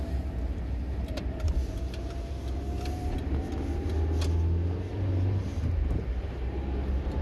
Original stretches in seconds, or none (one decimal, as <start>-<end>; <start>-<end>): 3.5-4.9

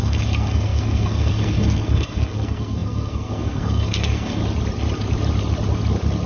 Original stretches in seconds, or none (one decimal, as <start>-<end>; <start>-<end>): 4.4-6.3

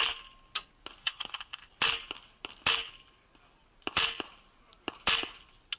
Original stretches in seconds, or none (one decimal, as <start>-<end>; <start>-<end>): 0.0-1.0; 1.7-5.8

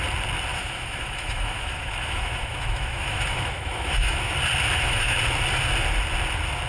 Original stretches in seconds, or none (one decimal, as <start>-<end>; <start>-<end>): 0.0-0.5; 4.3-4.7; 5.2-6.7